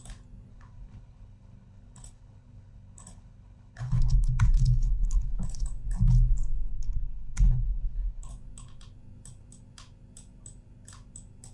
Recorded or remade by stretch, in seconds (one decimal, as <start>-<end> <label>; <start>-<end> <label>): 0.0-0.5 recorded; 0.5-5.6 remade; 5.6-6.7 recorded; 6.7-8.3 remade; 8.3-11.5 recorded